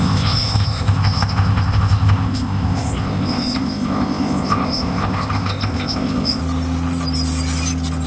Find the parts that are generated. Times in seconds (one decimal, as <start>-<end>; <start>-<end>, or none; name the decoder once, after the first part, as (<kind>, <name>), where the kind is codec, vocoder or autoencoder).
0.0-6.4 (codec, ZipCodec)